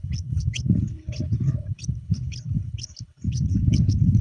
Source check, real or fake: fake